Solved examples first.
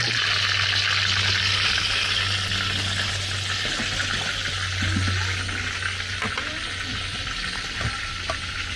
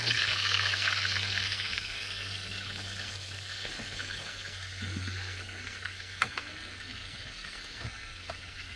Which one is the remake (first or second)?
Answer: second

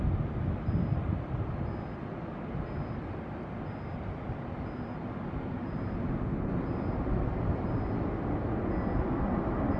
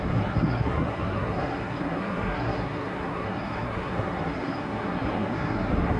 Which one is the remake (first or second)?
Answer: second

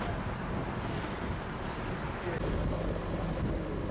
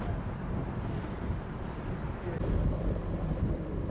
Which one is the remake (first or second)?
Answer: second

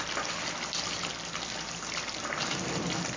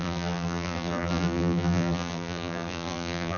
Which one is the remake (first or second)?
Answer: second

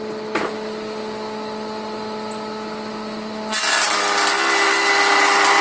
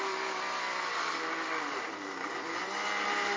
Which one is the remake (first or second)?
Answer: second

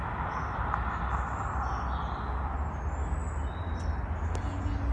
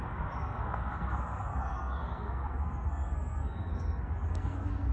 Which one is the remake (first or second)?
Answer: second